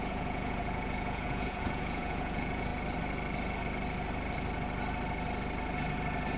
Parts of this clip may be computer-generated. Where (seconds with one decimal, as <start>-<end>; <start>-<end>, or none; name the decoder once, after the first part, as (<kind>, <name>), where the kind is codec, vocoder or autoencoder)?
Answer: 0.0-2.7 (vocoder, Vocos)